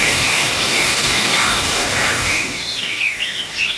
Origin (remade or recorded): remade